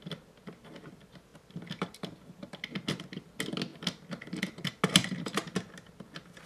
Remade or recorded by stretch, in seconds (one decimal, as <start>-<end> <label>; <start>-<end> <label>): 0.0-6.5 recorded